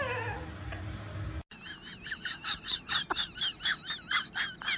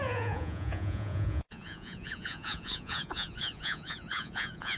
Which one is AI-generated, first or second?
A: second